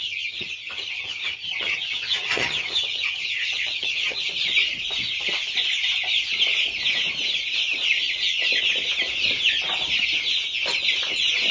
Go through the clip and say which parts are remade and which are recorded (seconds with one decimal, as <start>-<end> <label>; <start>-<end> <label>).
0.0-4.3 remade; 4.3-11.5 recorded